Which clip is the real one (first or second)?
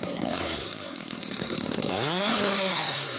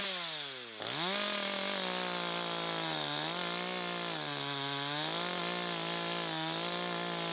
second